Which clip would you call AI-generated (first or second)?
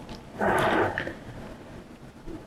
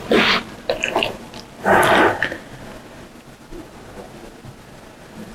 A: first